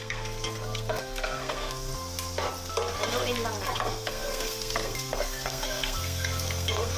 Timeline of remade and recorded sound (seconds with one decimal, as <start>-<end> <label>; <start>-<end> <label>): 0.0-1.9 remade; 1.9-3.6 recorded; 3.6-7.0 remade